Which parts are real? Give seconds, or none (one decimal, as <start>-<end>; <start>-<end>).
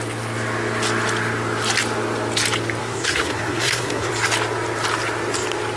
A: 0.0-2.8; 4.1-5.8